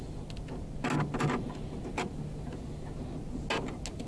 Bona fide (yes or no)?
yes